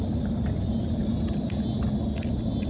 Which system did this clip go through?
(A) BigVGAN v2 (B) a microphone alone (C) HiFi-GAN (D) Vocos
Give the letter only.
B